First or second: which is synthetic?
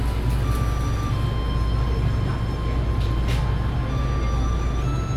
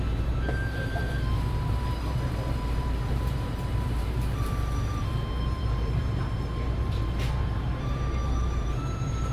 second